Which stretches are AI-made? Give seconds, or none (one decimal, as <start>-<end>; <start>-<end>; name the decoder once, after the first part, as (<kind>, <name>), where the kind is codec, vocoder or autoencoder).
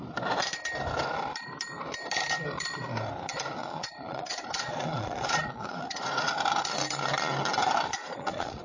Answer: 3.6-6.3 (vocoder, Vocos); 8.0-8.6